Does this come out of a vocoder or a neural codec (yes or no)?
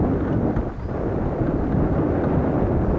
no